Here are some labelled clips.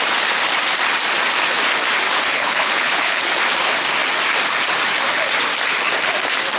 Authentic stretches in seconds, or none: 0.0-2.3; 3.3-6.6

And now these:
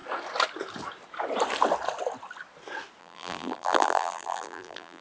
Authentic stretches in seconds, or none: 0.0-3.0

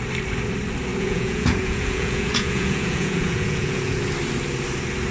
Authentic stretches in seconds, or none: 0.0-0.9; 4.0-5.1

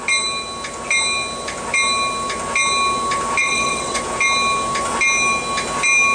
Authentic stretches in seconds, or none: 0.0-3.4; 4.0-6.1

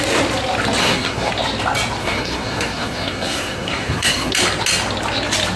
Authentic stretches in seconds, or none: 0.0-0.8; 1.3-2.0; 4.3-5.6

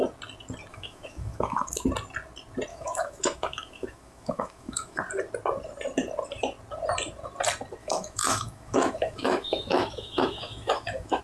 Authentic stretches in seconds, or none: 0.0-0.7; 1.9-2.7; 5.0-7.8

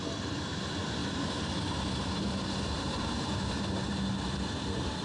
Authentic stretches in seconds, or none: 0.0-1.0; 4.0-5.0